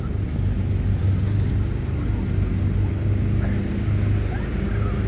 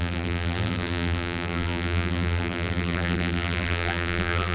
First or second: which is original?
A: first